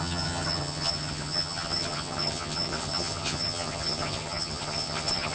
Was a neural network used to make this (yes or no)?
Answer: yes